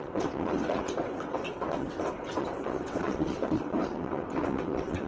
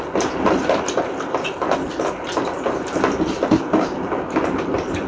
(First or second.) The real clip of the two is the second